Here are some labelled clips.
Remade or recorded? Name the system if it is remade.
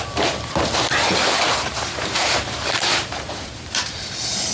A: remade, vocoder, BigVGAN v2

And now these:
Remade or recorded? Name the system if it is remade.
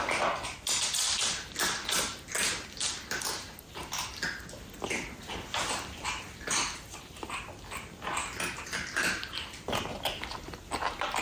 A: recorded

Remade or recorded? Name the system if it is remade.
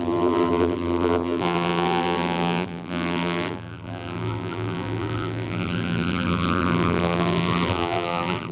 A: remade, vocoder, BigVGAN v2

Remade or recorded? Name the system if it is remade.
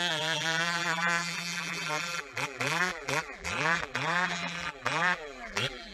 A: remade, vocoder, BigVGAN v2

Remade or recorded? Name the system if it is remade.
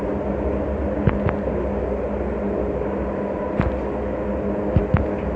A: remade, vocoder, BigVGAN v2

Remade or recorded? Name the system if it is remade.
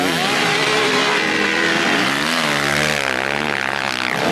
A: recorded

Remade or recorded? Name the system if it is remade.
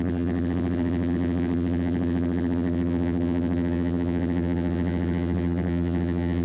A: remade, vocoder, BigVGAN v2